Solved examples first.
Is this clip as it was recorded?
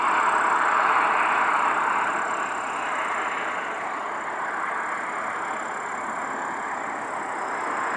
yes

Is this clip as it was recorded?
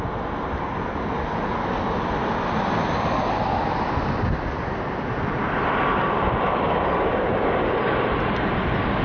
yes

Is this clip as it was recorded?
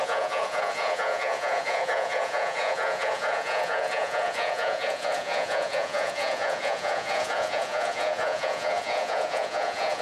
no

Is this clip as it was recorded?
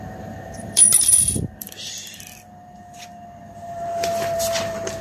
no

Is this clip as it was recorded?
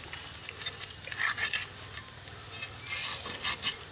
yes